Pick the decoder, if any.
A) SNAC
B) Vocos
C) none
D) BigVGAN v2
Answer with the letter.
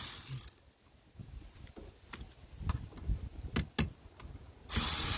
C